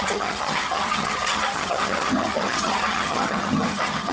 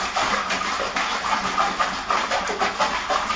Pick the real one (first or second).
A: second